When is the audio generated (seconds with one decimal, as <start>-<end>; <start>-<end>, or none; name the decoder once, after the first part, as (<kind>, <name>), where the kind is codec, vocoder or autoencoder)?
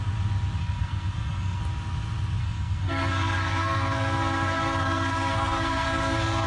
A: 0.6-1.6 (codec, SNAC); 2.4-6.5